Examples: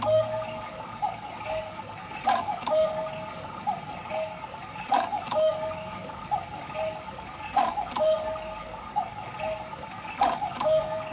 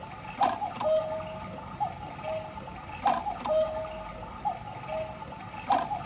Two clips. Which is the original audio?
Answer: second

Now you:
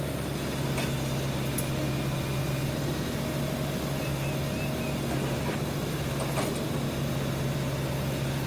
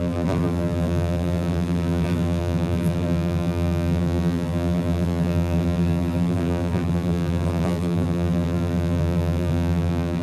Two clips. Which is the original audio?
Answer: first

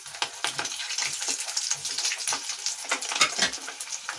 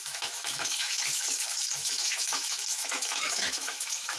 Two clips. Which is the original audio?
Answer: first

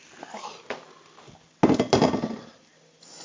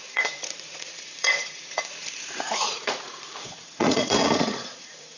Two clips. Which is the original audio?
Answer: first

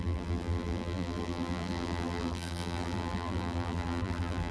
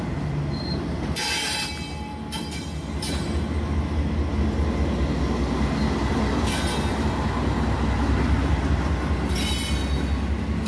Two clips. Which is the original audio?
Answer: second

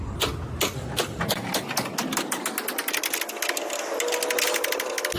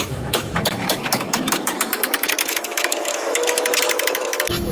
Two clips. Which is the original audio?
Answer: first